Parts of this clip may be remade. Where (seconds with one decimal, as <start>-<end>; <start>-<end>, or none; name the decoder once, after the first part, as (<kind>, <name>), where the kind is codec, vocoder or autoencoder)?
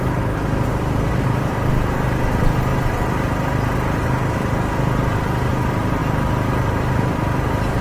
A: none